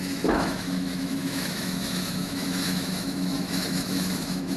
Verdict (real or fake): fake